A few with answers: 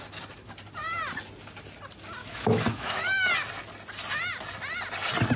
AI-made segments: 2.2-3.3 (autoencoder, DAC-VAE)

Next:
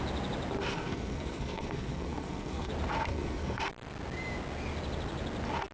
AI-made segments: 0.7-2.7 (codec, SNAC); 3.1-3.6

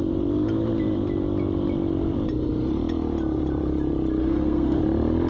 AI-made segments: 4.2-4.8 (codec, SNAC)

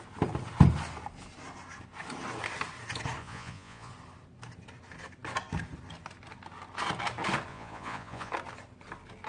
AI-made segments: 3.2-3.9 (vocoder, Vocos); 7.5-8.3